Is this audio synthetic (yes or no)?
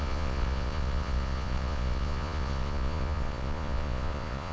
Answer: yes